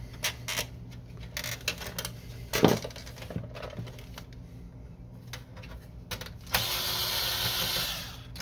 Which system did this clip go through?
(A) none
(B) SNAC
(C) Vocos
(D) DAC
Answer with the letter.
A